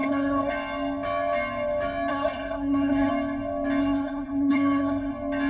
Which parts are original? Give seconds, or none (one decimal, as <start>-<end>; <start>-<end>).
0.5-2.1; 3.1-3.8; 5.1-5.5